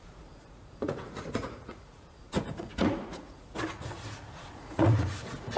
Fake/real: fake